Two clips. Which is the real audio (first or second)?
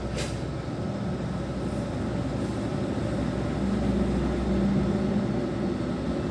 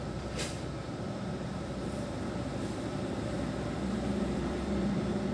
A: first